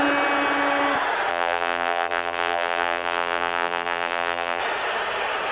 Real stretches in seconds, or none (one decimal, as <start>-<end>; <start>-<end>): 0.0-1.3; 4.6-5.5